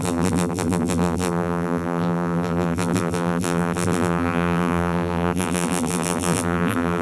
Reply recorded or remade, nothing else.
remade